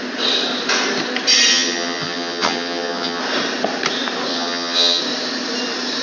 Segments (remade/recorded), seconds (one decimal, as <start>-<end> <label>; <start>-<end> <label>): 0.0-1.5 recorded; 1.5-3.2 remade; 3.2-4.3 recorded; 4.3-5.0 remade; 5.0-6.0 recorded